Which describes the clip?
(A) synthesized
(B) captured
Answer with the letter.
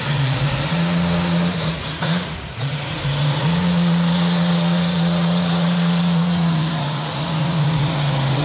A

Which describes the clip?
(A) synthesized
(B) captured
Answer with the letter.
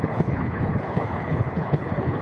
A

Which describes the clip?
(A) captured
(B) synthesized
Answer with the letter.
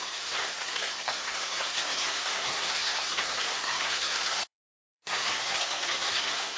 B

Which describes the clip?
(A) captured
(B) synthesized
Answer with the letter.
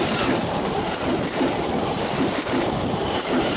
B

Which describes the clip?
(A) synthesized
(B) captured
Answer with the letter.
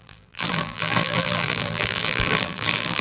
A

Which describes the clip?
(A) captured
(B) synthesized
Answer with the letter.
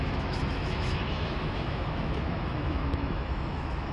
B